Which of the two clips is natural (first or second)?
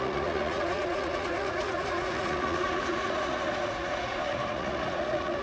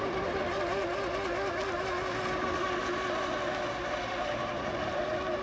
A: second